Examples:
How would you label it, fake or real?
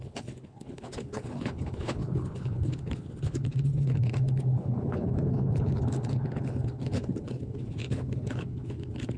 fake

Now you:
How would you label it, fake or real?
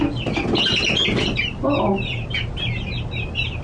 real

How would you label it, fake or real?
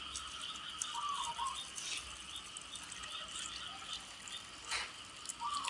real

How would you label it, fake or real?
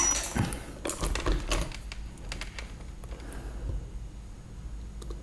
real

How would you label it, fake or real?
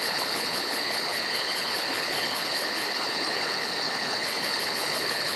fake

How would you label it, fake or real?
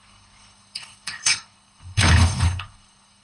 fake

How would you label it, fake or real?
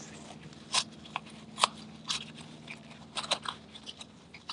real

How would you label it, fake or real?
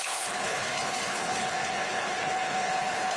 fake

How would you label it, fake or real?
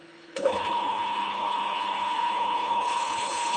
fake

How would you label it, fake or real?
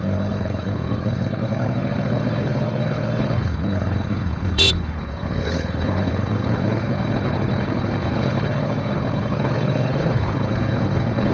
fake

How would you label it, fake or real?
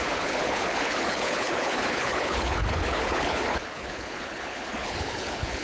fake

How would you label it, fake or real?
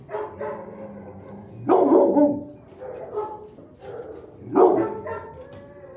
real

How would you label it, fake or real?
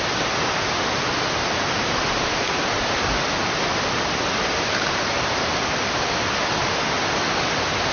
real